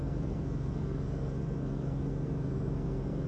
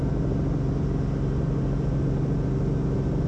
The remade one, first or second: first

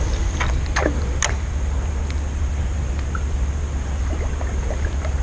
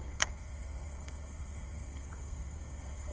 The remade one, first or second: second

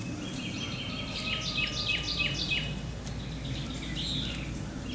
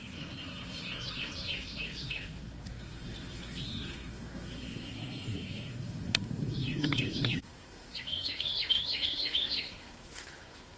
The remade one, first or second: second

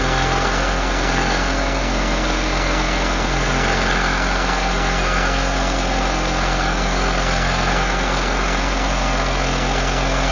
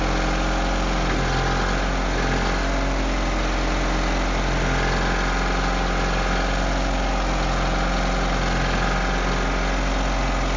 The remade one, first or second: first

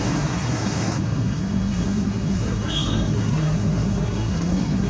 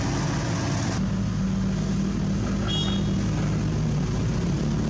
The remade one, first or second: first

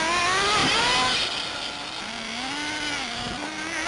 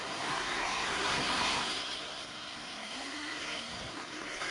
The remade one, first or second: second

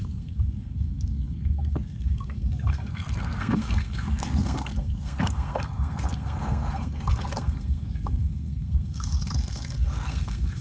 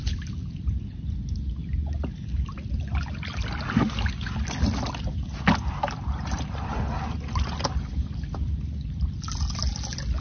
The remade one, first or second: first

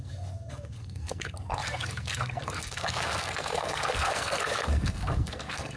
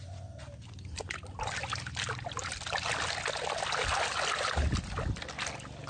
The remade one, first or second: first